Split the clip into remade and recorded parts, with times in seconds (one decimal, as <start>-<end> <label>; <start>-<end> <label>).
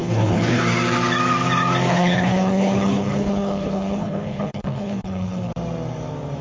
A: 0.0-0.6 remade; 0.6-1.9 recorded; 1.9-5.5 remade; 5.5-6.4 recorded